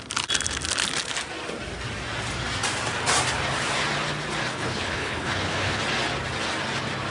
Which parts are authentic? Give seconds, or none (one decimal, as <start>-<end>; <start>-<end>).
0.0-4.5; 5.8-7.1